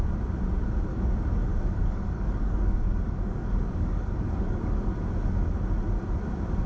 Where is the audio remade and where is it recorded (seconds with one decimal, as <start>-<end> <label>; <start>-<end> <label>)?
0.0-0.9 recorded; 0.9-4.9 remade; 4.9-6.7 recorded